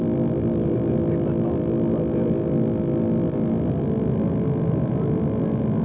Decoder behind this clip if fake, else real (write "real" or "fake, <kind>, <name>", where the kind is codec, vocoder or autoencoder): real